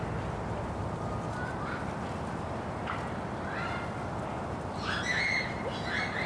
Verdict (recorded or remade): recorded